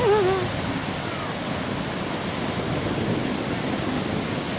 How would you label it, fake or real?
real